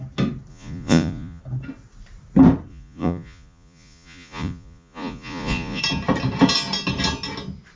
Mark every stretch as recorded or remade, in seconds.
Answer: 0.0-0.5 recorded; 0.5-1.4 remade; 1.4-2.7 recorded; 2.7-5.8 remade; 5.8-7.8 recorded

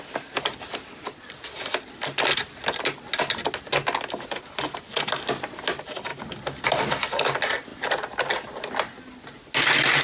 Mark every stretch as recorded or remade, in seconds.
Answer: 0.0-10.0 recorded

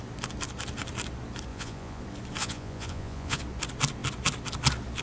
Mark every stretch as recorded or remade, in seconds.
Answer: 0.0-1.5 recorded; 1.5-2.0 remade; 2.0-2.4 recorded; 2.4-3.4 remade; 3.4-5.0 recorded

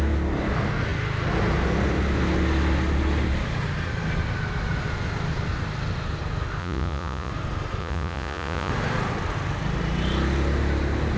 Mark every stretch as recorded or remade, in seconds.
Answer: 0.0-6.6 recorded; 6.6-7.3 remade; 7.3-7.8 recorded; 7.8-8.7 remade; 8.7-11.2 recorded

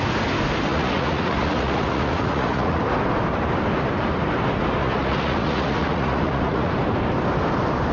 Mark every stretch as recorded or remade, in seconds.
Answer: 0.0-0.7 recorded; 0.7-2.8 remade; 2.8-4.8 recorded; 4.8-6.7 remade; 6.7-7.9 recorded